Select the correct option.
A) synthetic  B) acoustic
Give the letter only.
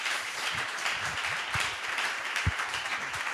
A